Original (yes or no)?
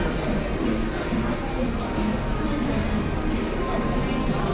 yes